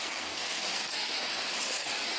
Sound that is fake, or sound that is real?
fake